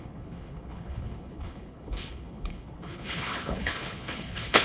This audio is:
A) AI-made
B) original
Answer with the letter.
A